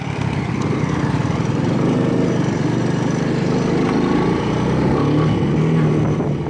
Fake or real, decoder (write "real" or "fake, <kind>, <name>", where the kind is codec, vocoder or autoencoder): real